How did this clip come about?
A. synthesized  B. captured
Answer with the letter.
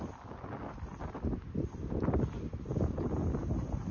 B